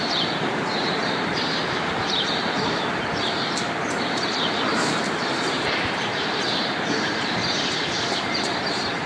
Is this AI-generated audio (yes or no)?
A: yes